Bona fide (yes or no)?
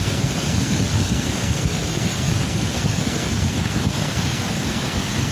no